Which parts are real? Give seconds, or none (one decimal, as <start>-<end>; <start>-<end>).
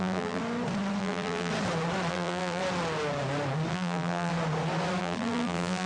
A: 0.4-1.0; 1.5-2.1; 2.6-3.7; 4.3-5.0